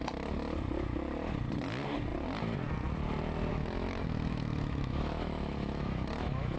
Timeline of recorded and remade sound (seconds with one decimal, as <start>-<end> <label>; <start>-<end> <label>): 0.0-3.5 recorded; 3.5-6.6 remade